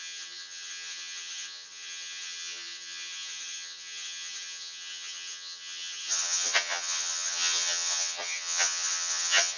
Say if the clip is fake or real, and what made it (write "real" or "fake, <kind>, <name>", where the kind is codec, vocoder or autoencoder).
fake, vocoder, HiFi-GAN